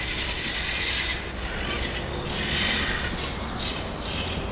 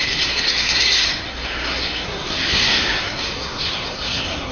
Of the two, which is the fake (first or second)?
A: second